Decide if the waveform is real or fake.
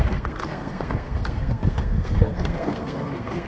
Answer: fake